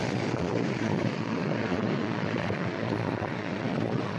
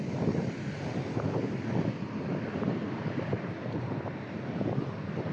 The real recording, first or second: second